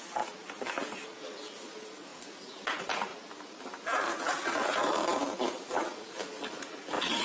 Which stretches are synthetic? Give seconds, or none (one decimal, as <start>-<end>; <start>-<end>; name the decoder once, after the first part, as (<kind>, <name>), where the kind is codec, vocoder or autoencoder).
none